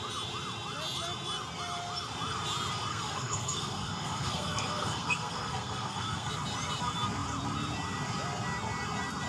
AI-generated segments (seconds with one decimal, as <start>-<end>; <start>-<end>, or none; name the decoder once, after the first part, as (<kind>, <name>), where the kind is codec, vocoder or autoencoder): 2.9-6.3 (codec, SNAC)